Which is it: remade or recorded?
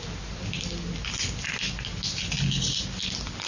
recorded